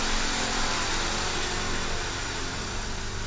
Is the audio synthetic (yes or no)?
no